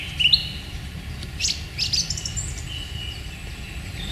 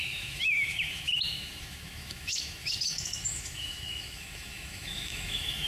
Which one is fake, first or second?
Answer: second